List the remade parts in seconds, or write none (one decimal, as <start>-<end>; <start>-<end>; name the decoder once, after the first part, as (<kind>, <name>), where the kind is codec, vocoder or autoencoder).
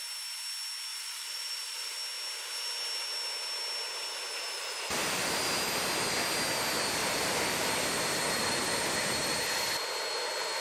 0.9-2.0 (vocoder, BigVGAN v2); 7.0-7.7